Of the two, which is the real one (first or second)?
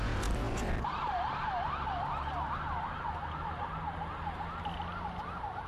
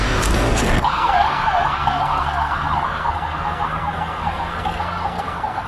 first